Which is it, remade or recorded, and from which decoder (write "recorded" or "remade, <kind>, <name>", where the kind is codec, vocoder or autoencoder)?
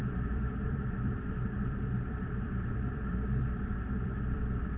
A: remade, vocoder, BigVGAN v2